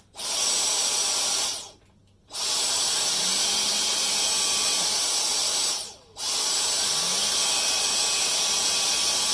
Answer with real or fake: real